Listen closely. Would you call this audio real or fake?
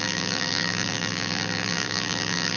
fake